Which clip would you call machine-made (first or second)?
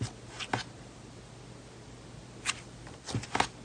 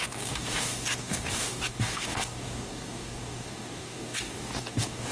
second